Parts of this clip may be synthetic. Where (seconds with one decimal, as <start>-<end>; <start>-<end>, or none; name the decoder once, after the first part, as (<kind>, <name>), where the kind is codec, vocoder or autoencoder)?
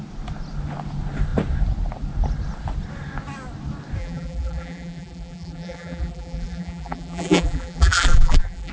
4.0-8.7 (vocoder, BigVGAN v2)